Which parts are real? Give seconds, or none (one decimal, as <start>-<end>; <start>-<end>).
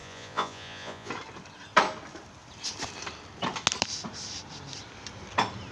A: 1.1-5.7